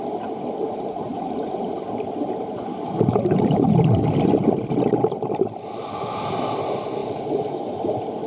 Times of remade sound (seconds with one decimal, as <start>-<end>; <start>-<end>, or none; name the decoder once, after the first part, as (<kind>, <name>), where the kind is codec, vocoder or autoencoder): 1.1-3.8 (vocoder, BigVGAN v2)